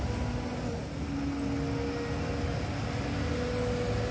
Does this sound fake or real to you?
real